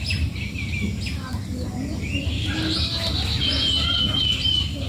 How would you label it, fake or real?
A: real